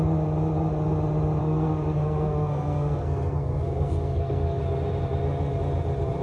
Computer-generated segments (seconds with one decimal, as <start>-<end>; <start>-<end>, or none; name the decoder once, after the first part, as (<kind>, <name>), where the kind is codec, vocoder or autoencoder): 1.4-4.6 (codec, SNAC)